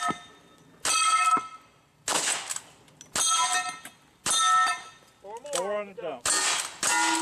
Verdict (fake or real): real